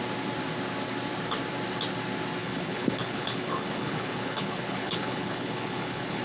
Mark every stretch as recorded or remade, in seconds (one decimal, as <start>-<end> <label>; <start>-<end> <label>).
0.0-2.4 recorded; 2.4-6.2 remade